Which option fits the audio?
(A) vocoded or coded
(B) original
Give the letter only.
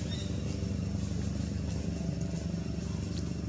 B